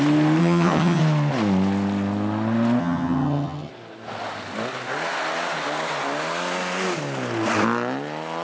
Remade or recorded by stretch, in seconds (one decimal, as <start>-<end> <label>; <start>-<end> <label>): 0.0-0.4 recorded; 0.4-1.0 remade; 1.0-2.8 recorded; 2.8-3.7 remade; 3.7-8.4 recorded